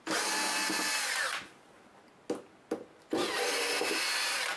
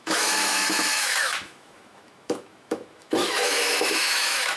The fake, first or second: second